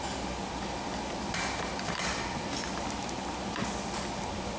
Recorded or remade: recorded